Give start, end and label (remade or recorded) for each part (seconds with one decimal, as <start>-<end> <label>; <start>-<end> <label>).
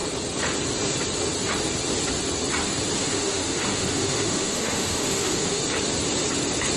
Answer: 0.0-3.0 recorded; 3.0-5.6 remade; 5.6-6.8 recorded